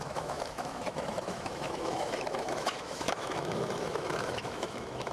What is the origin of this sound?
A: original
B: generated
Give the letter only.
B